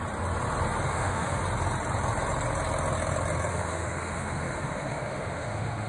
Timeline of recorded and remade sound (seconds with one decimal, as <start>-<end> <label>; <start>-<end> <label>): 0.0-0.9 recorded; 0.9-1.4 remade; 1.4-3.5 recorded; 3.5-5.9 remade